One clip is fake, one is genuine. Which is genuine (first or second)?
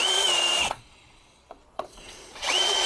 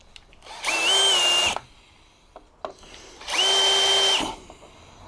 second